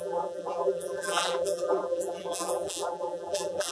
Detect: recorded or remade remade